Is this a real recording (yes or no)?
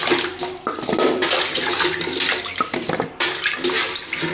yes